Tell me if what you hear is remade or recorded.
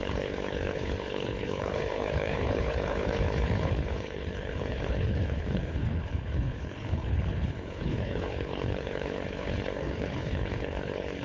remade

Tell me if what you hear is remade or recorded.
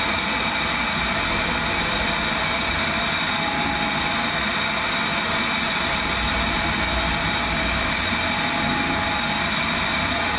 recorded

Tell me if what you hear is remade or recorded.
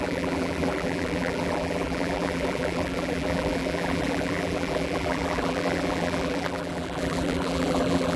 remade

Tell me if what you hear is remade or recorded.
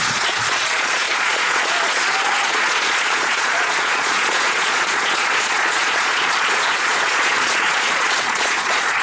remade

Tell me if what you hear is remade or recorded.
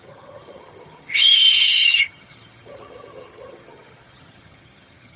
remade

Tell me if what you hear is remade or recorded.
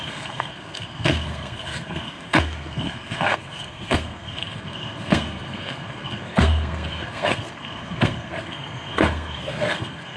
remade